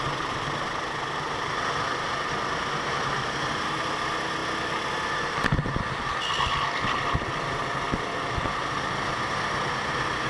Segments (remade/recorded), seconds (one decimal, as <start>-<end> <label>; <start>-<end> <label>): 0.0-10.3 recorded

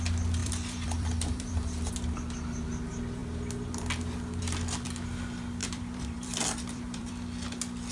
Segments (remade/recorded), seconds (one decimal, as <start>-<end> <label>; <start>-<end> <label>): 0.0-0.4 recorded; 0.4-1.9 remade; 1.9-5.6 recorded; 5.6-7.1 remade; 7.1-7.9 recorded

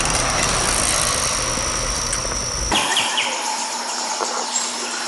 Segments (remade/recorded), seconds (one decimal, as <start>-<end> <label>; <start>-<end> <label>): 0.0-2.9 recorded; 2.9-5.1 remade

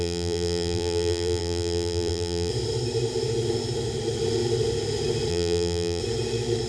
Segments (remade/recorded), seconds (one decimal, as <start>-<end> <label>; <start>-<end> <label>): 0.0-2.5 remade; 2.5-5.3 recorded; 5.3-6.0 remade; 6.0-6.7 recorded

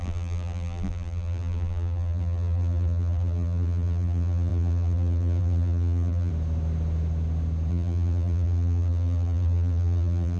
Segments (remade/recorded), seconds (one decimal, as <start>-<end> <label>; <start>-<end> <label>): 0.0-6.3 remade; 6.3-7.7 recorded; 7.7-10.4 remade

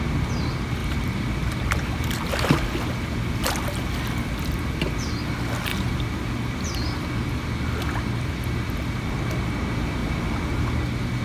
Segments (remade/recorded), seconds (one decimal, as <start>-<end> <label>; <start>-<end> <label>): 0.0-0.8 recorded; 0.8-2.3 remade; 2.3-10.0 recorded; 10.0-10.7 remade; 10.7-11.2 recorded

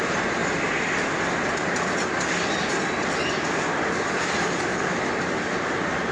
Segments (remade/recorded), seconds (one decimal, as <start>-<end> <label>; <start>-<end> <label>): 0.0-0.4 remade; 0.4-4.1 recorded; 4.1-6.1 remade

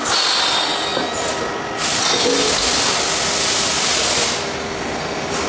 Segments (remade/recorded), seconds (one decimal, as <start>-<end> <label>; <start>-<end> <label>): 0.0-5.5 recorded